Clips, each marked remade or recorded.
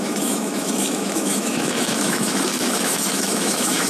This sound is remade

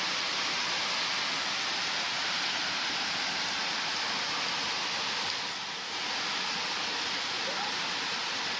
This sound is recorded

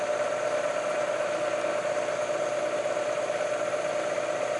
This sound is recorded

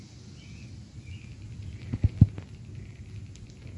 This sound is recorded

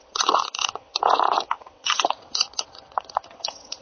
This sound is remade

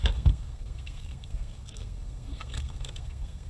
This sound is remade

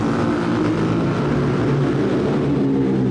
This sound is recorded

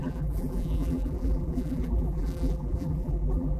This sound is remade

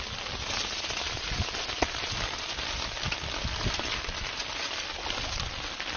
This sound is recorded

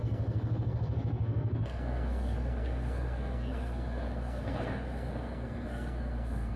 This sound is remade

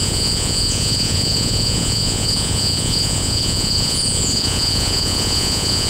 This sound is remade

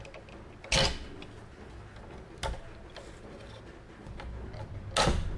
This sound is recorded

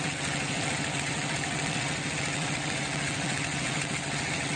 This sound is remade